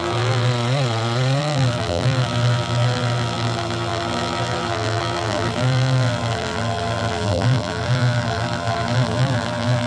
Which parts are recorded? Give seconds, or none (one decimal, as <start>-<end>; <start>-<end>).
0.5-1.4